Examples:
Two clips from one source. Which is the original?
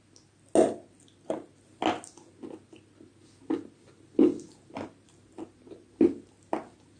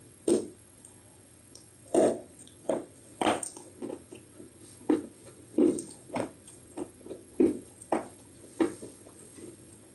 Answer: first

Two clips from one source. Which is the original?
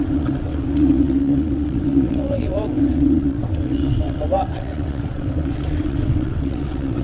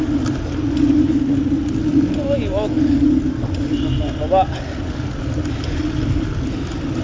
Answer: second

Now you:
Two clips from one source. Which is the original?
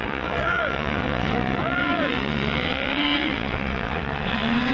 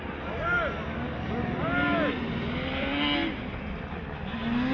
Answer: second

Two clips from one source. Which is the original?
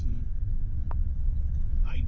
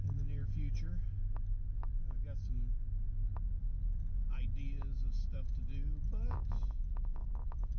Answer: second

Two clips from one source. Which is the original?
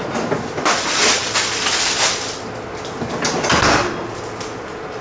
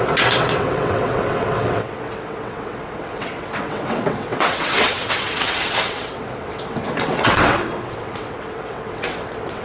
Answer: first